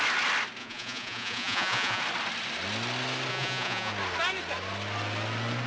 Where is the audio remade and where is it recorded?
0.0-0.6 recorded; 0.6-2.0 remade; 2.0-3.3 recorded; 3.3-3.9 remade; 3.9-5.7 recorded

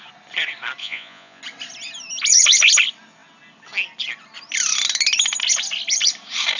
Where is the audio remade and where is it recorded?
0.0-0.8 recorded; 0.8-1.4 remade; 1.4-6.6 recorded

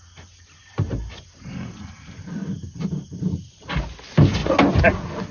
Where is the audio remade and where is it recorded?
0.0-0.6 recorded; 0.6-3.8 remade; 3.8-5.3 recorded

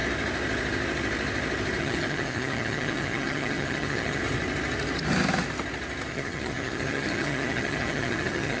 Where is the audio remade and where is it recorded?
0.0-1.8 recorded; 1.8-4.2 remade; 4.2-6.1 recorded; 6.1-8.6 remade

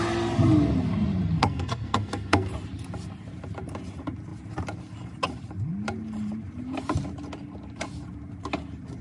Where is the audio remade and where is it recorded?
0.0-1.4 recorded; 1.4-2.5 remade; 2.5-9.0 recorded

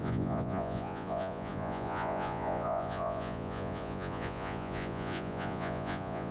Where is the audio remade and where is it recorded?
0.0-6.3 remade

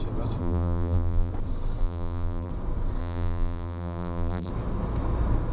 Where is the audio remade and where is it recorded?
0.0-0.4 recorded; 0.4-1.3 remade; 1.3-1.8 recorded; 1.8-2.5 remade; 2.5-3.0 recorded; 3.0-4.5 remade; 4.5-5.5 recorded